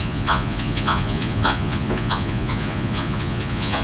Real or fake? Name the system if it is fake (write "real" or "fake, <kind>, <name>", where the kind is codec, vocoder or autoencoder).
fake, vocoder, Vocos